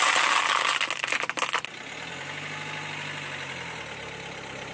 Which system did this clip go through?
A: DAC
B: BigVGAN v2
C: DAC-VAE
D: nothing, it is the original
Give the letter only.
D